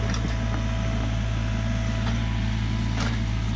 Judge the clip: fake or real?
real